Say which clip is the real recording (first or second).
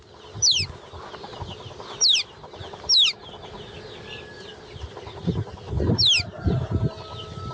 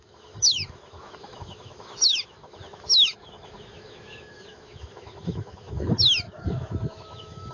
first